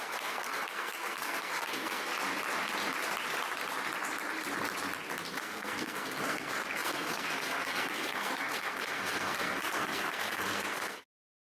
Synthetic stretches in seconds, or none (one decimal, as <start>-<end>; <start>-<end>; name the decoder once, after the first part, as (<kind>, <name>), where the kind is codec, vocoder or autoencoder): 0.0-2.1 (codec, SNAC); 5.3-11.6